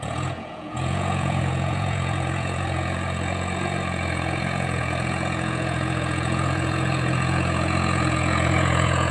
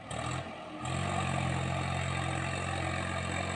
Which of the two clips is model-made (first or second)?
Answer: first